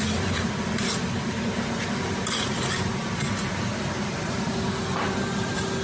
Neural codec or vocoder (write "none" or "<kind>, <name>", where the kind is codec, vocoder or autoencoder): none